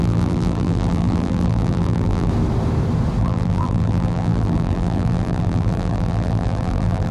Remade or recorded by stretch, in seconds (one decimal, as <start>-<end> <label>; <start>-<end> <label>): 0.0-2.3 remade; 2.3-3.2 recorded; 3.2-7.1 remade